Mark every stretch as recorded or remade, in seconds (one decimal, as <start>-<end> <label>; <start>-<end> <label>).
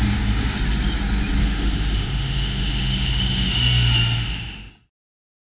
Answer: 0.0-1.4 recorded; 1.4-4.7 remade; 4.7-5.5 recorded